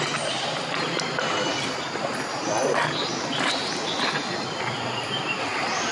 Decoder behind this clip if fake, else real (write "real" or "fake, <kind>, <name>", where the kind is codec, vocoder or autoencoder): real